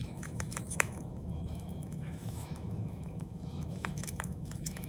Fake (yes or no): yes